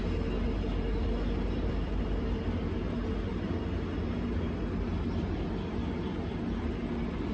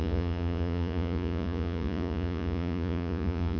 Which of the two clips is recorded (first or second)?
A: first